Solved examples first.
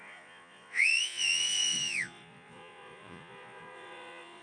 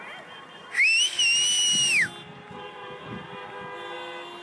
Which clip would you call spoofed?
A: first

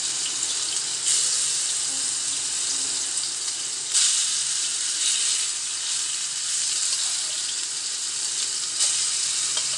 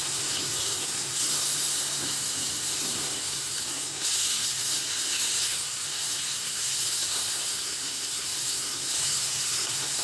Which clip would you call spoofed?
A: second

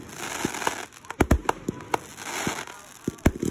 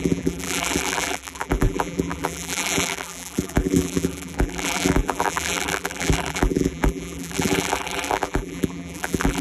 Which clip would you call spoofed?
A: second